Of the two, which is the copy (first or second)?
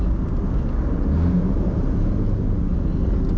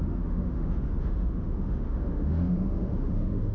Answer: second